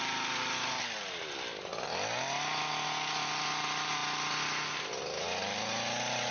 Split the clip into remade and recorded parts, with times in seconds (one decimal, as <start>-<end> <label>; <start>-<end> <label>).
0.0-6.3 recorded